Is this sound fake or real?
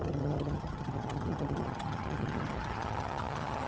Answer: fake